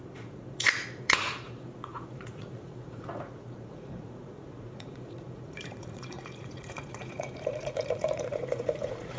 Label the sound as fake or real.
fake